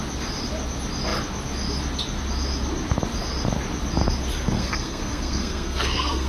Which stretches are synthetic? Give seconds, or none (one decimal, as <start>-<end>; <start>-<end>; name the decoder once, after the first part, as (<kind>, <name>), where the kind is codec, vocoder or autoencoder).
4.3-6.3 (codec, SNAC)